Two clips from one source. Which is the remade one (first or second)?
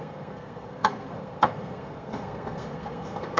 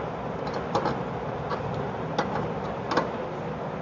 first